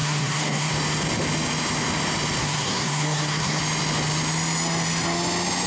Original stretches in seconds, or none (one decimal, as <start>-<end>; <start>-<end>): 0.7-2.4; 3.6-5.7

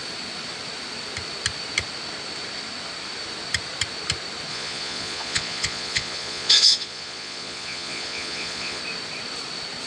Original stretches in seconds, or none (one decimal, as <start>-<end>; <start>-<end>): 0.0-4.5; 8.8-9.9

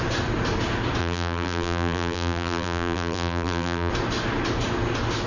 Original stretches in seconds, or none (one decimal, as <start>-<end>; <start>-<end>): 0.0-1.0; 3.9-5.3

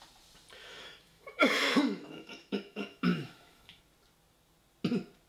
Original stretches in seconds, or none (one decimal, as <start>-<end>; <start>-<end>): 0.0-0.6; 3.8-5.3